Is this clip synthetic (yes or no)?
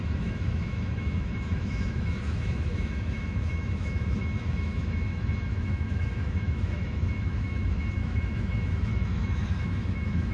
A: yes